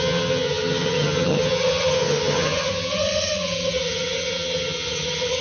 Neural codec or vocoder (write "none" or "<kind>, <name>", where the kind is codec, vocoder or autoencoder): vocoder, HiFi-GAN